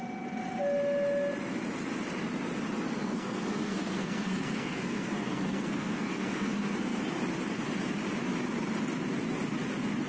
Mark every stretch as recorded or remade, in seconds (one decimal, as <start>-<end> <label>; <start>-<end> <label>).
0.0-3.0 recorded; 3.0-7.0 remade; 7.0-10.1 recorded